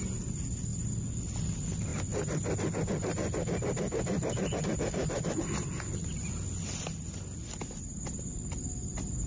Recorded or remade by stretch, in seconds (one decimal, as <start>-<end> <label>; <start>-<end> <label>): 0.0-9.3 recorded